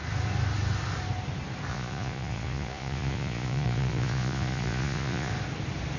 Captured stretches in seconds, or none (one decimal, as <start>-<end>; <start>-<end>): 0.0-1.7; 5.3-6.0